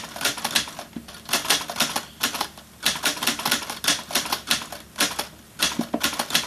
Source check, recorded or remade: recorded